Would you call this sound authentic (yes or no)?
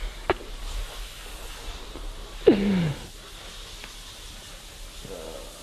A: yes